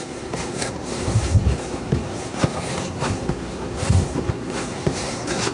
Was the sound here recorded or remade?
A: remade